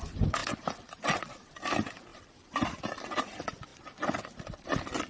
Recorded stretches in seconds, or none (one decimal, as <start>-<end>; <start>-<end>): none